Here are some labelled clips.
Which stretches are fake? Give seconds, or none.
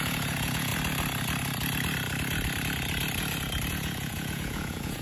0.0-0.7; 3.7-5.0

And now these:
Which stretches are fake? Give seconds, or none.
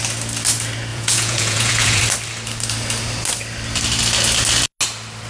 0.9-2.0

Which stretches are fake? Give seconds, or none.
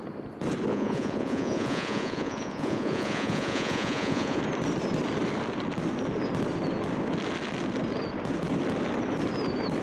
0.7-4.4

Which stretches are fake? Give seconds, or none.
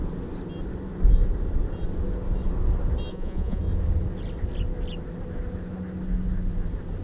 3.1-3.6